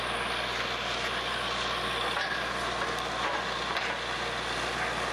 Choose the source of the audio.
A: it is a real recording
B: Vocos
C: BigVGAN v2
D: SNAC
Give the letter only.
A